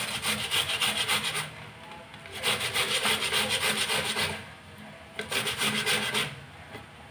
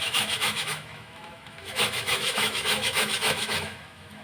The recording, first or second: first